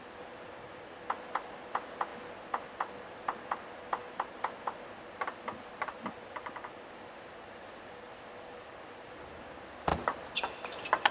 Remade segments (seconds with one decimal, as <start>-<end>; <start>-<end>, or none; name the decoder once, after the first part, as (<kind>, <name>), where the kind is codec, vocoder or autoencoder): none